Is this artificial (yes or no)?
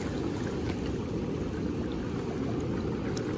no